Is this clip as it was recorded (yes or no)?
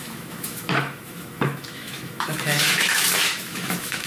no